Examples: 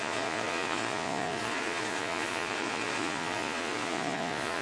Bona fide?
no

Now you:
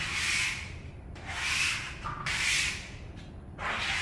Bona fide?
yes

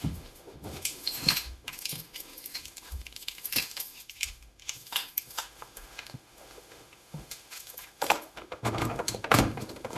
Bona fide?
no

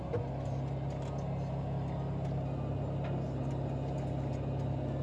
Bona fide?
yes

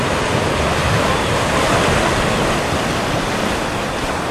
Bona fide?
yes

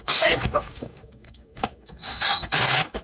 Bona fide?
no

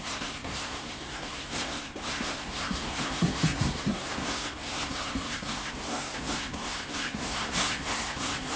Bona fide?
no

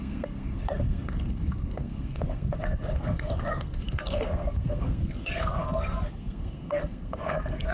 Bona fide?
no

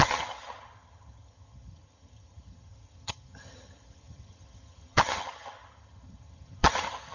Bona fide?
no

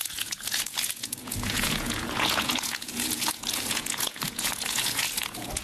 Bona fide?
no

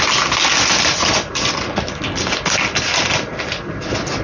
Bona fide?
yes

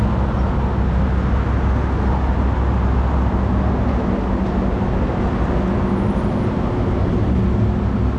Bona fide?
yes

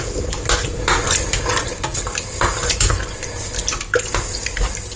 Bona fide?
yes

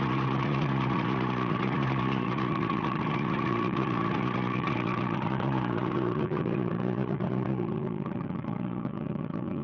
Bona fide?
no